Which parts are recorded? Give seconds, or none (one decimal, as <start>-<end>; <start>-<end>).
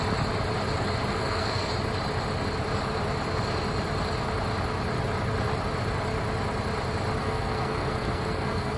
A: 0.0-1.1; 1.7-7.2